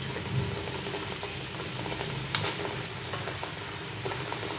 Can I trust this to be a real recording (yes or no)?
yes